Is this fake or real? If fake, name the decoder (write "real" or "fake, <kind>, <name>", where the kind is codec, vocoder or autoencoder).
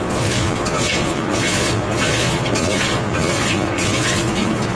fake, vocoder, Vocos